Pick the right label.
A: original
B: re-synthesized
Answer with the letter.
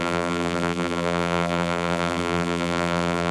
B